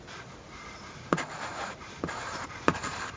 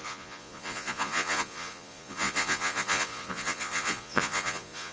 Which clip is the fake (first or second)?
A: second